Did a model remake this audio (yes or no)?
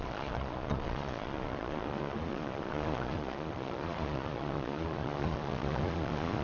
yes